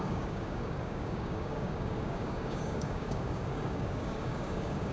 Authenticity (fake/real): fake